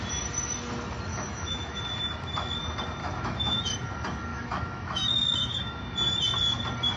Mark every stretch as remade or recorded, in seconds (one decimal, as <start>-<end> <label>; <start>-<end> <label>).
0.0-1.1 recorded; 1.1-1.8 remade; 1.8-3.0 recorded; 3.0-3.6 remade; 3.6-4.3 recorded; 4.3-5.8 remade; 5.8-7.0 recorded